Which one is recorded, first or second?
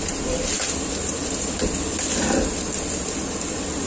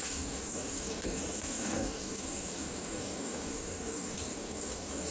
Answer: first